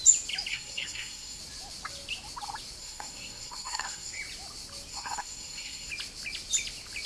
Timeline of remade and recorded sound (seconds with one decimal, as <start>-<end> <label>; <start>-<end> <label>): 0.0-0.5 recorded; 0.5-1.4 remade; 1.4-2.8 recorded; 2.8-4.2 remade; 4.2-4.9 recorded; 4.9-5.9 remade; 5.9-7.1 recorded